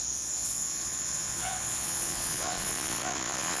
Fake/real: fake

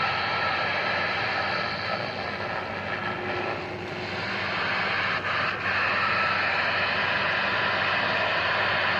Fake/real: real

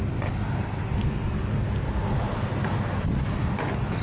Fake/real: real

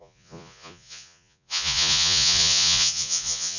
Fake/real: fake